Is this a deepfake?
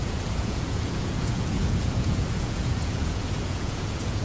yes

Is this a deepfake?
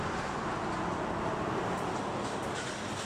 no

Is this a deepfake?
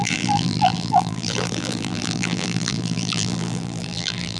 yes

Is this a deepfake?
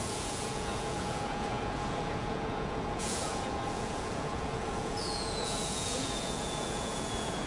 yes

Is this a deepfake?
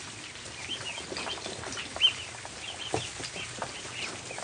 no